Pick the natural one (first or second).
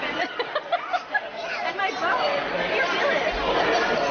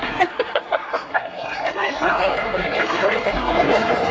first